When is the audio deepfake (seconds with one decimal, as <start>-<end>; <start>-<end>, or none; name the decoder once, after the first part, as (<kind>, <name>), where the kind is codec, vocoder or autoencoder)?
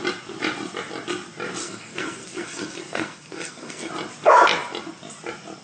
1.6-3.9 (codec, SNAC)